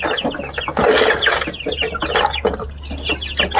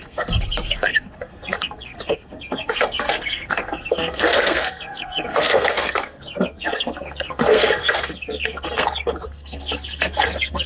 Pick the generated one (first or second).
second